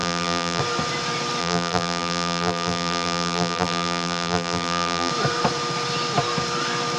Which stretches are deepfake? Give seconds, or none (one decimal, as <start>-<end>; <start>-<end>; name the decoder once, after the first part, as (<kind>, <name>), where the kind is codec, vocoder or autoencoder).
0.0-0.6 (vocoder, BigVGAN v2); 1.4-5.1